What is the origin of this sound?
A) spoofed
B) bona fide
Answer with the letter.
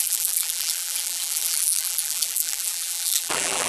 A